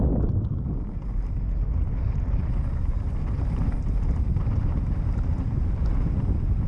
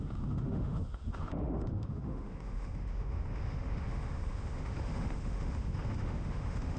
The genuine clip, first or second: first